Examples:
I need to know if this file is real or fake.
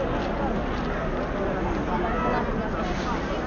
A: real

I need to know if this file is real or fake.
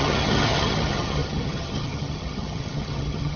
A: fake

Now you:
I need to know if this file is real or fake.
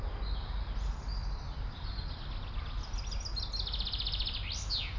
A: real